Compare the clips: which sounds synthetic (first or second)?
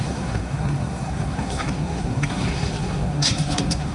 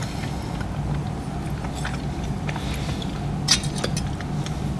first